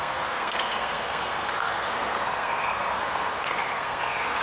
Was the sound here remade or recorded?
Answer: remade